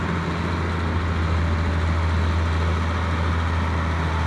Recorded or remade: recorded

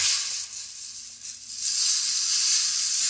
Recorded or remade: recorded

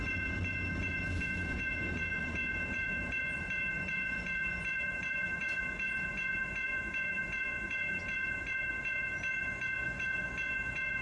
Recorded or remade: remade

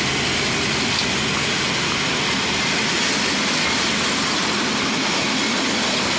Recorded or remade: recorded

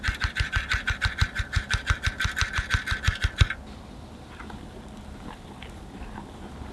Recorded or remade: recorded